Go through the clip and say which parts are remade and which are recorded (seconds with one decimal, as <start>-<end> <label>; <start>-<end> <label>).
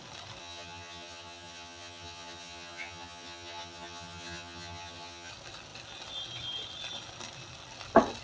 0.0-0.4 recorded; 0.4-5.3 remade; 5.3-8.2 recorded